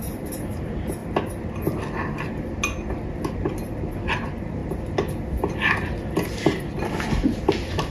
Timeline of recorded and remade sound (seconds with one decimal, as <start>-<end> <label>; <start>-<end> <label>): 0.0-7.9 recorded